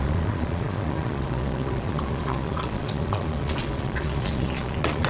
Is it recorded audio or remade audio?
remade